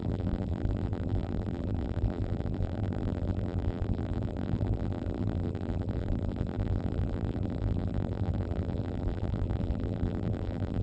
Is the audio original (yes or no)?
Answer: no